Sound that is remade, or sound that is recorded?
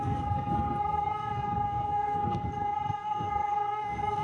remade